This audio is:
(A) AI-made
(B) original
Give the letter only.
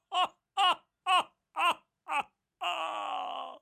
B